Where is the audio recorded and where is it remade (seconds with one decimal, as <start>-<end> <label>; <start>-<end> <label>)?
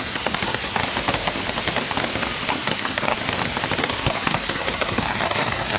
0.0-0.8 remade; 0.8-2.5 recorded; 2.5-3.2 remade; 3.2-3.8 recorded; 3.8-5.8 remade